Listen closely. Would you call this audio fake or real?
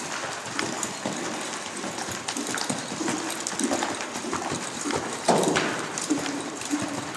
fake